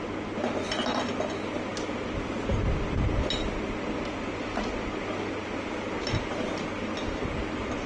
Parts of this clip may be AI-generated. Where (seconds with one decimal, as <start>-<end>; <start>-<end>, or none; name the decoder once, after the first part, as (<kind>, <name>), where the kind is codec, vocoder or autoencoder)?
none